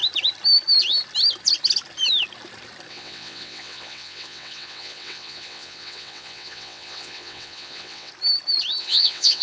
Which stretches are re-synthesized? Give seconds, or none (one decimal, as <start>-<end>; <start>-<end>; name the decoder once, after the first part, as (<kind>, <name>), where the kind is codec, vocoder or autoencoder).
2.9-8.1 (vocoder, WaveNeXt); 8.8-9.4